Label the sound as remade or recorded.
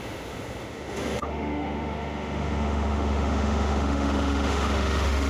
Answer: remade